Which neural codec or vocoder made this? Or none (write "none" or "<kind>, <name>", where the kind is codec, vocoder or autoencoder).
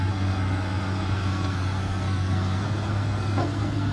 codec, SNAC